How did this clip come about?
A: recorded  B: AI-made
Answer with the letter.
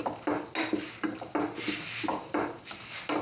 A